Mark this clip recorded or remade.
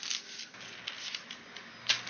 recorded